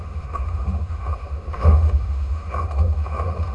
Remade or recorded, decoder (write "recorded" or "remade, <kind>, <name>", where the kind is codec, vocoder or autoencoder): remade, autoencoder, DAC-VAE